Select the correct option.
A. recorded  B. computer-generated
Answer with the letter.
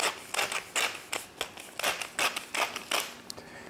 A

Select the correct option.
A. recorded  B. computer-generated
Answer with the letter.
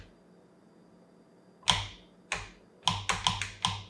A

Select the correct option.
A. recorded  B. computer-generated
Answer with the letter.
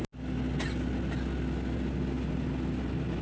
A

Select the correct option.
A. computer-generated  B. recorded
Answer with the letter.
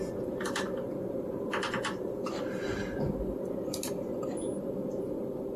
B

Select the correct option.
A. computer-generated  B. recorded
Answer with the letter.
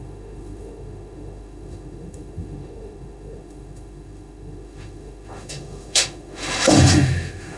A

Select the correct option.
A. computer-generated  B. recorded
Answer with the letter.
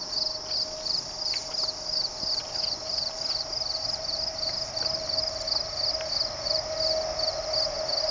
B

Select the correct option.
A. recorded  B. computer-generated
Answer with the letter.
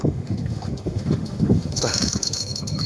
B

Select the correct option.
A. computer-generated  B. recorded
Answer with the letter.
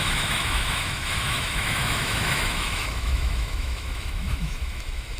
A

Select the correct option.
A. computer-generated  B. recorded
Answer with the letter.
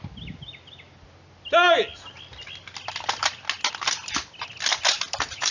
B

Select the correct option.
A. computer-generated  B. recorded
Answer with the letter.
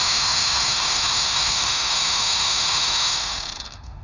A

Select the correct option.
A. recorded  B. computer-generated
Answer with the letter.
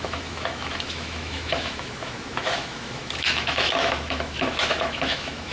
B